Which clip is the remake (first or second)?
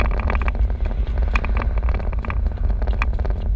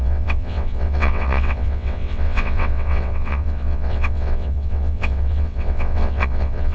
second